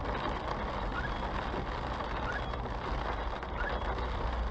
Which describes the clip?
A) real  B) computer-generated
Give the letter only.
A